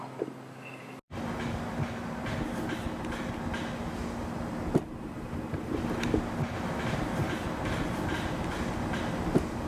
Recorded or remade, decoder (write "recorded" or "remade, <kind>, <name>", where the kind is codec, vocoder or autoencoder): recorded